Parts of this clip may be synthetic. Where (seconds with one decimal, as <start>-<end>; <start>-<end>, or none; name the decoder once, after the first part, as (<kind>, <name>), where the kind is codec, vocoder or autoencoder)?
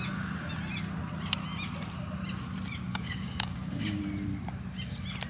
2.9-4.0 (codec, DAC)